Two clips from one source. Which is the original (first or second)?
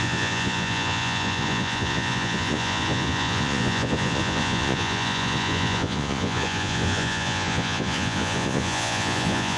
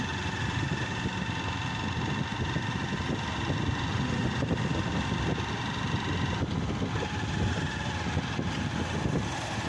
second